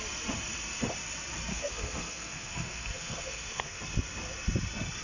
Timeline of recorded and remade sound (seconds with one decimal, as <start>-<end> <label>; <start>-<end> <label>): 0.0-1.5 recorded; 1.5-3.8 remade; 3.8-5.0 recorded